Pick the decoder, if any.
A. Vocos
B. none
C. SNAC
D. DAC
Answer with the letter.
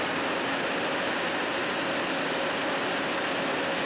B